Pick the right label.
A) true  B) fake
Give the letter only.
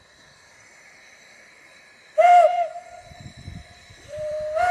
B